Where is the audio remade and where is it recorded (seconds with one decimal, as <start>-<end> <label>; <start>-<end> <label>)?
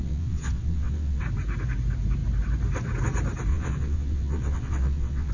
0.0-1.2 remade; 1.2-3.5 recorded; 3.5-5.3 remade